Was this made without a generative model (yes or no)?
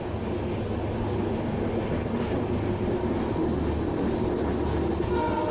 yes